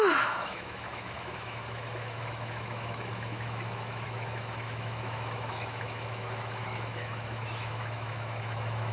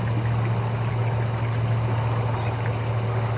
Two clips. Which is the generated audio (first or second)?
first